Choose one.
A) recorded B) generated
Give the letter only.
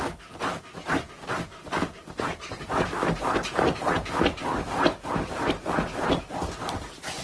A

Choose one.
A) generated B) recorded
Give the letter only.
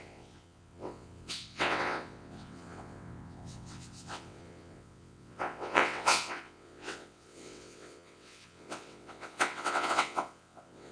A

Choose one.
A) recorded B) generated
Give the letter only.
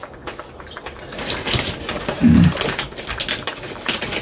A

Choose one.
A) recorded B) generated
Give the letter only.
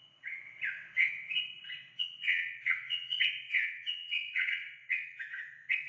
B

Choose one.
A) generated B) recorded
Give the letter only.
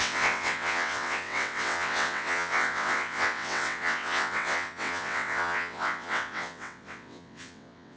A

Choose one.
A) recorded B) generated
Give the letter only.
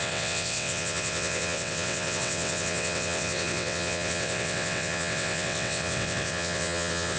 B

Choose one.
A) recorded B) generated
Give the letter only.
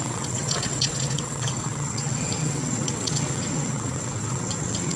B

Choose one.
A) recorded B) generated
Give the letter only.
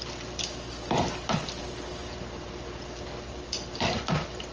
A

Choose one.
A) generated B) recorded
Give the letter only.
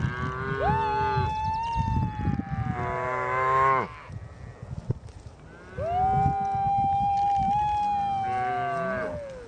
B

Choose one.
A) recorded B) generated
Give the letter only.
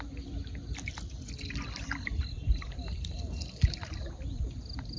A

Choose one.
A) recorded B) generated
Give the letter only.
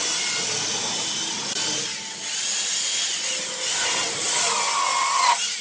A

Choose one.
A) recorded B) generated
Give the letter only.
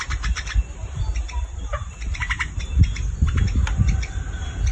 A